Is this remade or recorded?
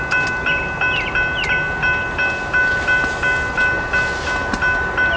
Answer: recorded